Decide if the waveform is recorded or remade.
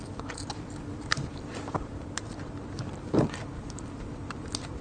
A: remade